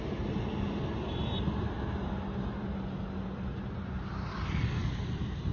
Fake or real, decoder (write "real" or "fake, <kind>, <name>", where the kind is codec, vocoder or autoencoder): real